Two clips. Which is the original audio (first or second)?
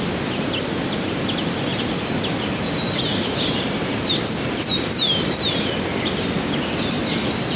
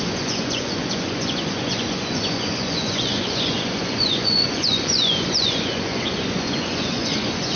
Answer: first